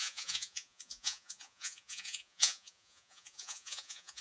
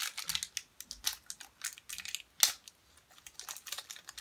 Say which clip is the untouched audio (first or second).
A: second